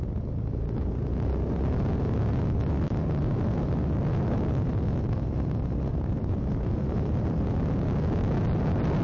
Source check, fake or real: real